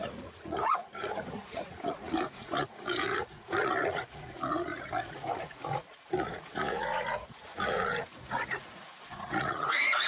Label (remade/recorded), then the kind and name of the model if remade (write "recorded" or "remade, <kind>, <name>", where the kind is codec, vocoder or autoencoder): remade, vocoder, Vocos